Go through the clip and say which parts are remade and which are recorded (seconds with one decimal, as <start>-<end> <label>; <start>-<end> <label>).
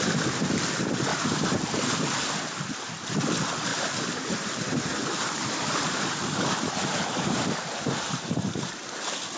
0.0-1.1 recorded; 1.1-1.6 remade; 1.6-3.7 recorded; 3.7-8.7 remade; 8.7-9.4 recorded